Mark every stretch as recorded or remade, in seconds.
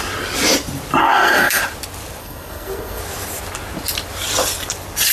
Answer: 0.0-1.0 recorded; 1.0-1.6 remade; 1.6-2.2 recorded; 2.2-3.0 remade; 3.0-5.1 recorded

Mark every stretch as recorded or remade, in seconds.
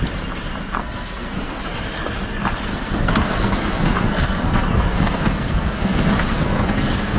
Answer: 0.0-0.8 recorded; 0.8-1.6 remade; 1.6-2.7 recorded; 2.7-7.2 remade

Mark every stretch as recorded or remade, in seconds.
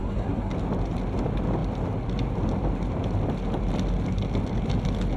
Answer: 0.0-0.5 remade; 0.5-5.2 recorded